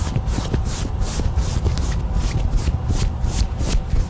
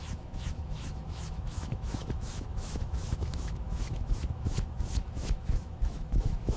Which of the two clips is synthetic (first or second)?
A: second